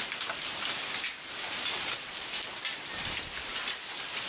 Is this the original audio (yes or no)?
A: no